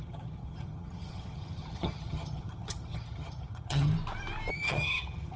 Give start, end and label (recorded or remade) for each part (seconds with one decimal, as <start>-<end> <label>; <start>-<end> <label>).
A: 0.0-3.9 remade; 3.9-4.5 recorded; 4.5-5.4 remade